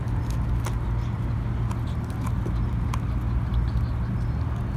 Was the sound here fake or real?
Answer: real